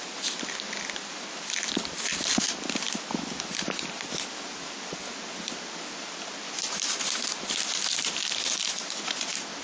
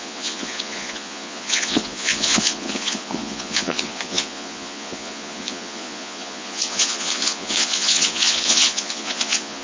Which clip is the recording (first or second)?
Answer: first